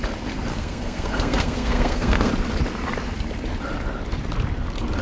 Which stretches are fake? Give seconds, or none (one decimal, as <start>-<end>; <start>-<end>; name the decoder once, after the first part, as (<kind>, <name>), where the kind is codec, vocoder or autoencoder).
0.5-2.3 (codec, SNAC)

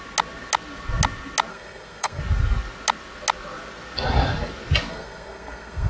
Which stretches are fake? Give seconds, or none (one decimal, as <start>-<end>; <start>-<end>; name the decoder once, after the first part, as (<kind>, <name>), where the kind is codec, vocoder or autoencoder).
1.5-2.2 (codec, SNAC); 4.9-5.9

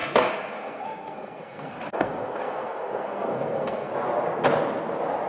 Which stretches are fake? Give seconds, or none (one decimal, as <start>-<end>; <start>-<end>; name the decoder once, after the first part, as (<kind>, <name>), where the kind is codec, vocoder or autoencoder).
0.0-3.9 (codec, SNAC)

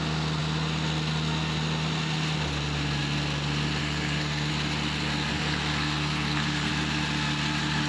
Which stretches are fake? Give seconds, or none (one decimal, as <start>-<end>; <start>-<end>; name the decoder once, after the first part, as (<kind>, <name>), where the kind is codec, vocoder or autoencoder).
3.8-4.5 (codec, SNAC); 5.3-6.7

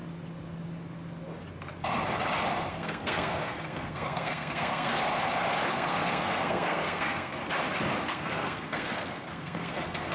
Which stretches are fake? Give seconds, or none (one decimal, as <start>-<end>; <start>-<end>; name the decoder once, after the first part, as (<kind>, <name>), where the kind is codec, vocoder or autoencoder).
2.7-4.9 (codec, SNAC); 5.7-7.4; 8.1-10.1

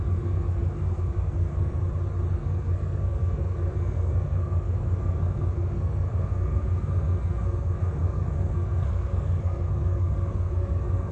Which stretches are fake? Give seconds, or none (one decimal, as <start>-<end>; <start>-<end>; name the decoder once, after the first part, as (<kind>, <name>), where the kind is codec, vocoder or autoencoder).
0.0-1.8 (codec, SNAC); 2.3-11.1

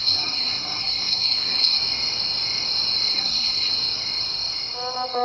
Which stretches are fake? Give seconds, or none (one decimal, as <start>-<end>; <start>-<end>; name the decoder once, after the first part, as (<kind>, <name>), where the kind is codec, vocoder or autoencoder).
0.0-1.8 (codec, SNAC); 3.1-3.7

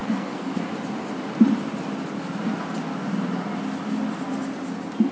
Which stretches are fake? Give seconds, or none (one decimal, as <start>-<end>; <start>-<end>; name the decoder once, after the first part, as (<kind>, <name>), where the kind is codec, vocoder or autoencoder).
0.0-0.6 (codec, SNAC)